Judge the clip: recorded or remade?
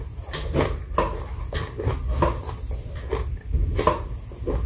recorded